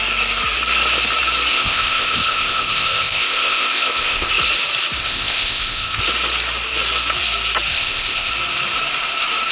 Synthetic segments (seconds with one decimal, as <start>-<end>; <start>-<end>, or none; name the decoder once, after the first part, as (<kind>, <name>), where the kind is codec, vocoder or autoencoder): 1.5-4.3 (codec, ZipCodec); 5.0-6.0; 7.7-8.3